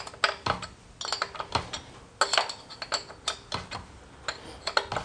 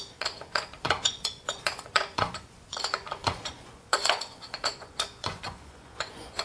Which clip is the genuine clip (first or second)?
first